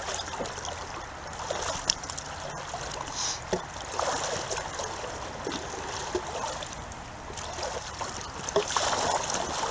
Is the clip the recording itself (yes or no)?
yes